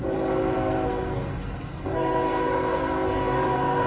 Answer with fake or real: fake